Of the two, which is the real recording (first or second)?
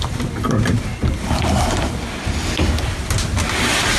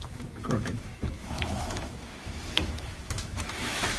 first